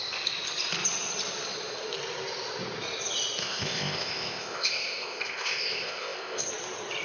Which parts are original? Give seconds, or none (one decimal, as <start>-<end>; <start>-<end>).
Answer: 0.0-3.4; 6.5-7.0